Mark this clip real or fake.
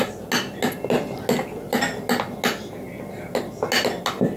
real